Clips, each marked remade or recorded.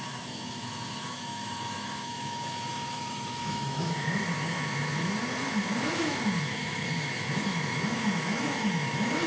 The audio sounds remade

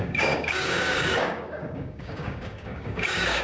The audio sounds remade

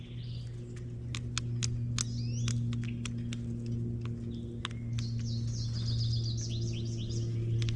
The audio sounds recorded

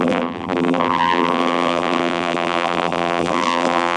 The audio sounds remade